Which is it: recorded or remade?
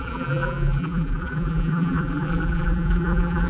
remade